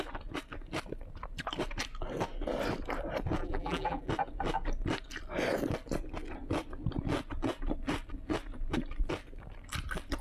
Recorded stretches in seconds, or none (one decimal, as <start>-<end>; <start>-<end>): 0.0-3.4; 4.1-10.2